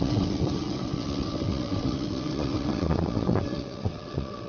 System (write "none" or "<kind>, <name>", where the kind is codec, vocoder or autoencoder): vocoder, WaveNeXt